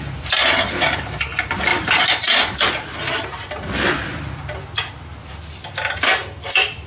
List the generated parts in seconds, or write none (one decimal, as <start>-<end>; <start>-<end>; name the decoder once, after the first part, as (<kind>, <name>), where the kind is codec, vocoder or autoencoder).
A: none